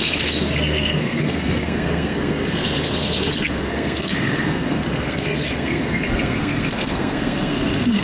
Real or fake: fake